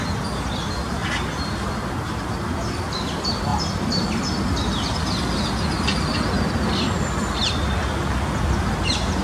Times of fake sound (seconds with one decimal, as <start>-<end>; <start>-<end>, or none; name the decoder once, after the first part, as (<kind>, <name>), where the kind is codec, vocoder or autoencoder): none

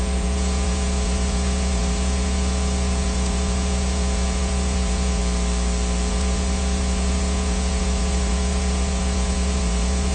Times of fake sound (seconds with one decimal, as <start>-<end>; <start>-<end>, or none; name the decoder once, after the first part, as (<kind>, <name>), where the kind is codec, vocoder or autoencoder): 0.0-5.2 (vocoder, Vocos); 6.1-10.1

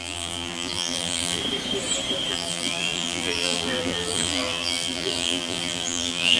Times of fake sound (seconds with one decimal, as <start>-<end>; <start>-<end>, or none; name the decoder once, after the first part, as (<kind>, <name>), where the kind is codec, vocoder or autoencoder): 0.0-1.4 (vocoder, BigVGAN v2); 2.3-6.4

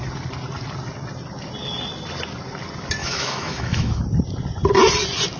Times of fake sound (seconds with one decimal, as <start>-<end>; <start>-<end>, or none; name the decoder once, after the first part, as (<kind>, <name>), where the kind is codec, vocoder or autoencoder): 3.0-4.0 (autoencoder, DAC-VAE)